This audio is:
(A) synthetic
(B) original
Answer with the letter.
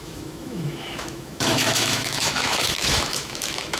A